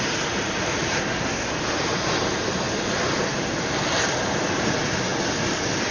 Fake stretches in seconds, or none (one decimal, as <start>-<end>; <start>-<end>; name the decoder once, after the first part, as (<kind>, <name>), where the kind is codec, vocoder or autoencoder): 0.9-1.5 (codec, SNAC)